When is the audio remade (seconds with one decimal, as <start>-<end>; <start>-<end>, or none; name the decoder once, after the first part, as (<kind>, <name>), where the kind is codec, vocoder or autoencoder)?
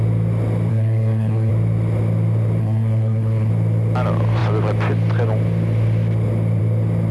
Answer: 0.7-1.5 (codec, SNAC); 2.6-3.5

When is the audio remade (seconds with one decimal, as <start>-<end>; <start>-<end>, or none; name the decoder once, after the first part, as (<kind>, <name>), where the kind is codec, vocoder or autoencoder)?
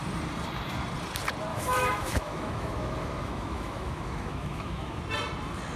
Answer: 1.5-5.0 (autoencoder, DAC-VAE)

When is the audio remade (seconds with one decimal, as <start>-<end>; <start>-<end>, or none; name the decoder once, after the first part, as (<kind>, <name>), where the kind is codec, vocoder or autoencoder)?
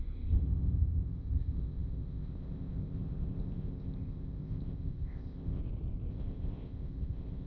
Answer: 0.0-5.6 (codec, ZipCodec); 6.1-7.5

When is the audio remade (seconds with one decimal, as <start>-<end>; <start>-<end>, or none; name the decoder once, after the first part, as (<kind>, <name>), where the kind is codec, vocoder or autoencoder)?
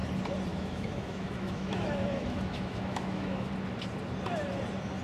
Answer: 0.5-3.5 (autoencoder, DAC-VAE)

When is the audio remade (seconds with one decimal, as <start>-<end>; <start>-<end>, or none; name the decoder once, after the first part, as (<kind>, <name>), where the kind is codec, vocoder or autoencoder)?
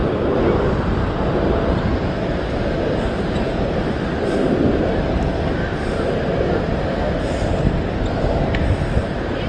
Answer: 0.0-1.1 (vocoder, BigVGAN v2)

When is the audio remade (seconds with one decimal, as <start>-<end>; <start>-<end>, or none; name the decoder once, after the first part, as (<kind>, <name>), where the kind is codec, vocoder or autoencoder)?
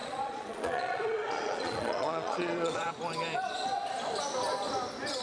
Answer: 0.0-2.9 (vocoder, Vocos)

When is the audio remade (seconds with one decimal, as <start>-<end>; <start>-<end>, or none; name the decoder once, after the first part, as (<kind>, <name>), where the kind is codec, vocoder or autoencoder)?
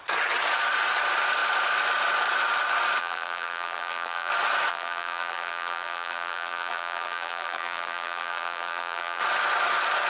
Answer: 3.0-4.3 (vocoder, BigVGAN v2); 4.7-9.2